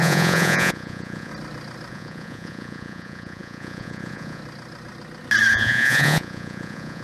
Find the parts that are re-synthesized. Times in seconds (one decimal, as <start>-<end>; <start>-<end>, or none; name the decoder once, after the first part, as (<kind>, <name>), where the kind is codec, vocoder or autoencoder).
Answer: 0.0-1.3 (vocoder, Vocos); 1.9-4.4; 5.5-7.0